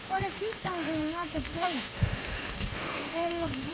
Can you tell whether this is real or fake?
fake